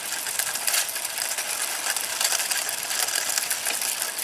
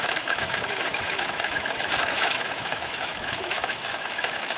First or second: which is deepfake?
second